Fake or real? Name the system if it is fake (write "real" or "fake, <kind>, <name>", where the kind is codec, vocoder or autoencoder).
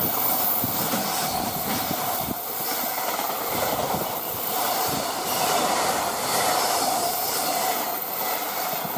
fake, vocoder, BigVGAN v2